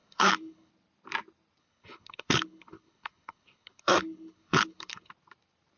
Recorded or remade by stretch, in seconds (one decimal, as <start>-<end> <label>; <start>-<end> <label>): 0.0-0.7 remade; 0.7-1.6 recorded; 1.6-5.1 remade; 5.1-5.8 recorded